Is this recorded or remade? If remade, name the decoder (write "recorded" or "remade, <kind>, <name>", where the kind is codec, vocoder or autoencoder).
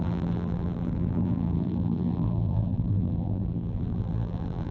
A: remade, vocoder, BigVGAN v2